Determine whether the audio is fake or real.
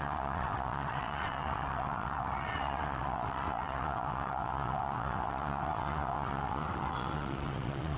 fake